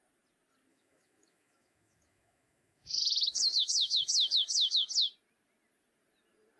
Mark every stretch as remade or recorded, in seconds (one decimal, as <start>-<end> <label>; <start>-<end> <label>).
0.0-0.7 recorded; 0.7-4.7 remade; 4.7-6.6 recorded